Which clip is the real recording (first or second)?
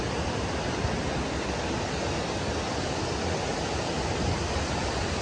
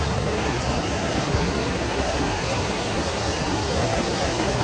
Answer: first